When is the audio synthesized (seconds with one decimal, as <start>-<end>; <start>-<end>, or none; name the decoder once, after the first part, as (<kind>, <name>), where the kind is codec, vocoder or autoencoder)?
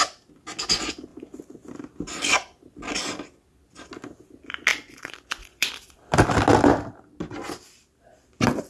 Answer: 4.7-5.7 (vocoder, Vocos)